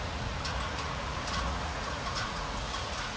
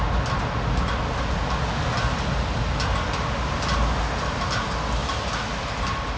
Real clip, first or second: second